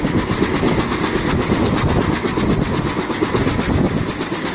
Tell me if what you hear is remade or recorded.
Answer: recorded